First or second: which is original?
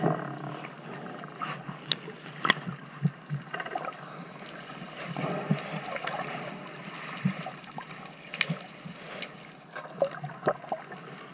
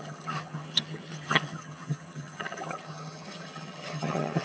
first